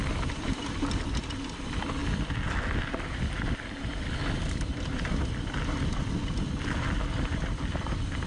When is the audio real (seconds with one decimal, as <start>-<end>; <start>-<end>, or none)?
0.0-8.3